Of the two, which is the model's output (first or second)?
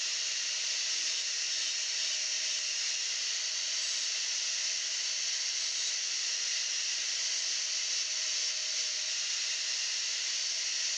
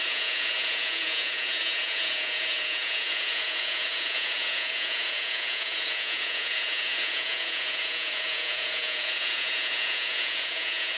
second